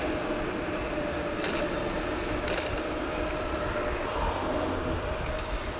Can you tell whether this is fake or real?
real